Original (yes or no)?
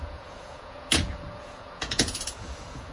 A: no